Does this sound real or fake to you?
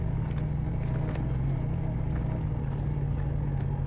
real